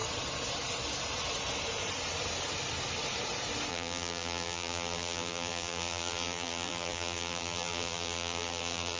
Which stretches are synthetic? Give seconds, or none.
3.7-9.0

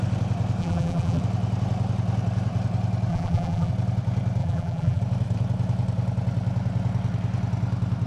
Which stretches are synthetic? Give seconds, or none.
0.6-1.2; 3.1-3.7; 4.4-5.0

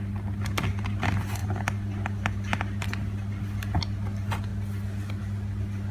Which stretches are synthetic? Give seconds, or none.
none